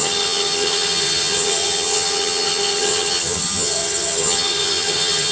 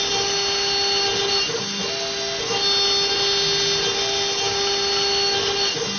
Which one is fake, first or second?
first